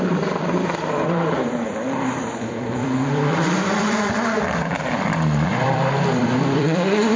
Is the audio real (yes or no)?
no